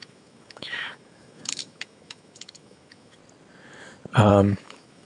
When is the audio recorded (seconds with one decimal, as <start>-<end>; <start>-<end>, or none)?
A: 3.2-4.3